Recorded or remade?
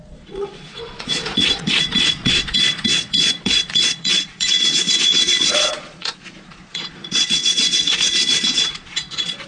remade